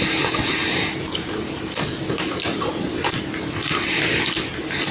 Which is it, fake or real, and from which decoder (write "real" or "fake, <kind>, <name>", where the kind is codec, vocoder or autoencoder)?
real